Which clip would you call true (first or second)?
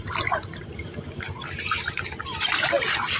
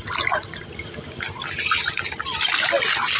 second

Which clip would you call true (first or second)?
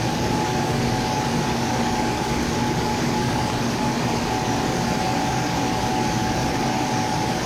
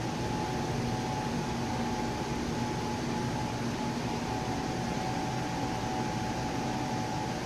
second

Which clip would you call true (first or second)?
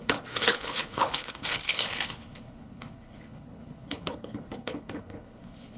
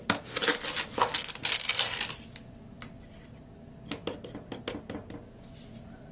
second